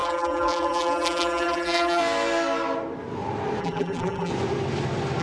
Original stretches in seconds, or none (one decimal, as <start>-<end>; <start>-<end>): 2.0-3.6; 4.3-5.2